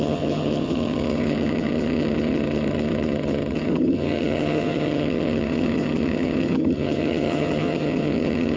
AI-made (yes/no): yes